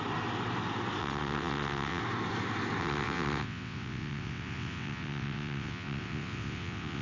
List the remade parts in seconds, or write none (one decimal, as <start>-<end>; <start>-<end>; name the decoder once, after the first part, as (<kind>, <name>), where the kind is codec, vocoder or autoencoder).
1.0-2.0 (vocoder, WaveNeXt); 2.8-7.0